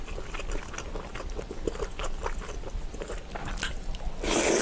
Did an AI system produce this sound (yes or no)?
no